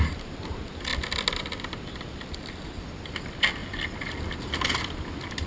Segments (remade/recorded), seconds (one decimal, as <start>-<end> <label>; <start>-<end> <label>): 0.0-5.5 recorded